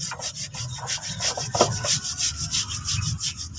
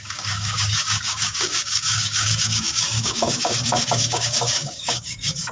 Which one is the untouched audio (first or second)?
first